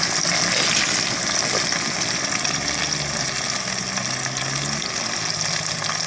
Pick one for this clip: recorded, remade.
recorded